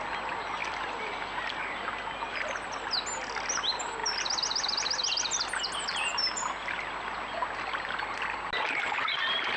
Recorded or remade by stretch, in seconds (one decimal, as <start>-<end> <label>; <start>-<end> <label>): 0.0-0.6 recorded; 0.6-1.1 remade; 1.1-9.6 recorded